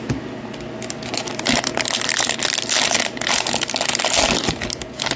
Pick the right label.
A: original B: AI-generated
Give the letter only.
A